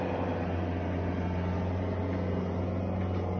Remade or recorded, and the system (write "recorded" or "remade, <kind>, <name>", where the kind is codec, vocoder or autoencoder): recorded